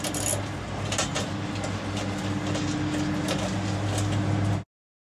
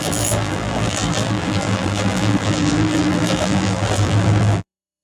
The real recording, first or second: first